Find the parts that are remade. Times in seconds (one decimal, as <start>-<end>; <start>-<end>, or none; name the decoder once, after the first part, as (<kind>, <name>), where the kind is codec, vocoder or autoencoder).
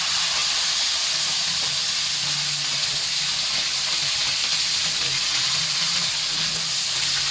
none